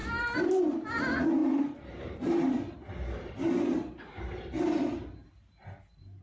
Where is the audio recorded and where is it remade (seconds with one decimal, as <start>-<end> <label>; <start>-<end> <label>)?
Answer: 0.0-1.4 recorded; 1.4-5.0 remade; 5.0-6.2 recorded